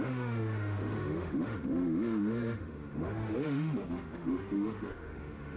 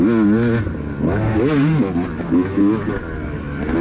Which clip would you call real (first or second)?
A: second